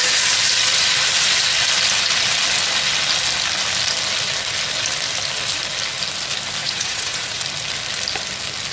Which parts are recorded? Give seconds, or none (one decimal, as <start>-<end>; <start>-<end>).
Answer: 0.0-6.6; 7.4-8.7